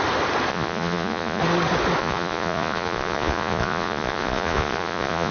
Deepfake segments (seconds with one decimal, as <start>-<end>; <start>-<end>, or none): 0.5-1.4; 2.0-5.3